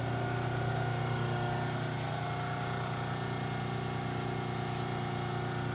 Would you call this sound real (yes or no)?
yes